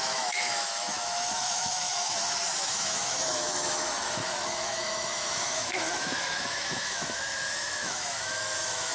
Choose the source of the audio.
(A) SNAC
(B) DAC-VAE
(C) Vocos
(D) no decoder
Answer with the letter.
B